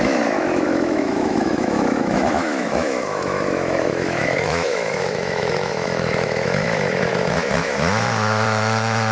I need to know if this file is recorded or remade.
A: remade